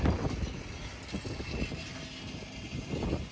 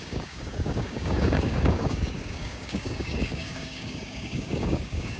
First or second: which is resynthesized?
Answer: second